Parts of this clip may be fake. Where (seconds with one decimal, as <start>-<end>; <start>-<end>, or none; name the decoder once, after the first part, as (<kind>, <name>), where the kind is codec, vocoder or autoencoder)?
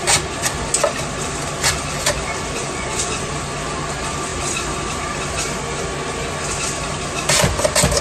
2.6-3.3 (vocoder, Vocos)